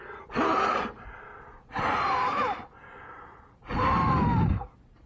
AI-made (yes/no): no